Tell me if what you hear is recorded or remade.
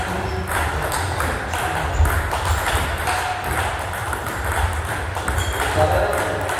recorded